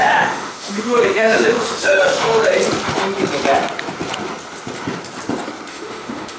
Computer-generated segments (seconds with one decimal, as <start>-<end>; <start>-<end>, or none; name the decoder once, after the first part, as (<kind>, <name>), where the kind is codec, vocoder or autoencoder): 0.0-2.5 (autoencoder, DAC-VAE); 5.7-6.4